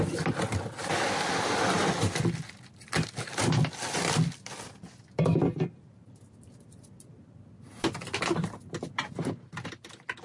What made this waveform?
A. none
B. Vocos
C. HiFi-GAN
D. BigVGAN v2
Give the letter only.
A